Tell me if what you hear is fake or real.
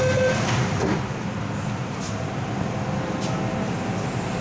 real